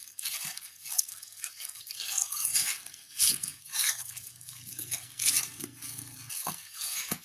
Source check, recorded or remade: remade